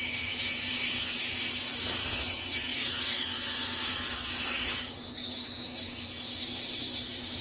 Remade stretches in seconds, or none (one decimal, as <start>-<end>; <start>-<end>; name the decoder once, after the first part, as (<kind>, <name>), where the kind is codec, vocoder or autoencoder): 0.0-7.4 (codec, DAC)